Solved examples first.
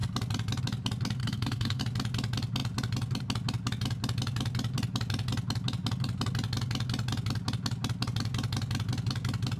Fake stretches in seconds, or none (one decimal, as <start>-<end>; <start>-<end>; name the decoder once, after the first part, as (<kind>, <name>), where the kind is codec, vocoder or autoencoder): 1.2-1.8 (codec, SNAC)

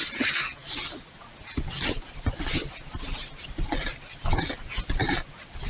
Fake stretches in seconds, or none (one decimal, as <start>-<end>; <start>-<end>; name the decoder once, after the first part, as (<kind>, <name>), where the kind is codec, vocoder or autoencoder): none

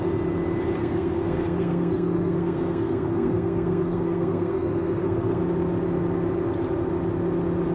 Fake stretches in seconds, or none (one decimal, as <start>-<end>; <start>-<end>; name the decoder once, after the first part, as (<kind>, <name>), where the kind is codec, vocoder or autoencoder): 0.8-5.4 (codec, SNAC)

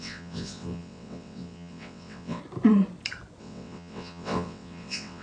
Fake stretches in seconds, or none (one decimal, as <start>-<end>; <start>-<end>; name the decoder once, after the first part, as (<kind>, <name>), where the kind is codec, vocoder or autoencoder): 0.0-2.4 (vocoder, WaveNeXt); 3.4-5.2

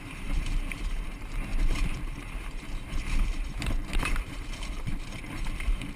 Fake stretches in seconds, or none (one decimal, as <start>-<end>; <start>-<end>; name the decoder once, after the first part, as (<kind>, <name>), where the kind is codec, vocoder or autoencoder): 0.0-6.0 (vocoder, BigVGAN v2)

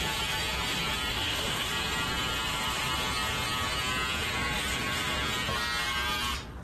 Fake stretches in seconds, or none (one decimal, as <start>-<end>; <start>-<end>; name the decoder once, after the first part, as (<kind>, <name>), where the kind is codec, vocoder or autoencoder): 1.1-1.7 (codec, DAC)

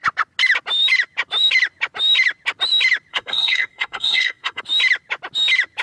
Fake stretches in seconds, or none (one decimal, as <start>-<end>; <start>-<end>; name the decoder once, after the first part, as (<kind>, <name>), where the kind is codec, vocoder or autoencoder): 3.1-4.6 (codec, SNAC)